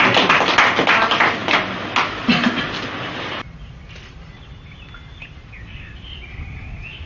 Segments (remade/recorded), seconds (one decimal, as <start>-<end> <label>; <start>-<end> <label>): 0.0-7.1 recorded